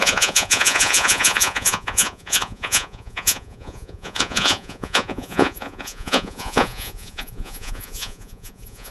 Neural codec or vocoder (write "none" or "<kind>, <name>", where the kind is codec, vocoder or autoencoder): vocoder, Vocos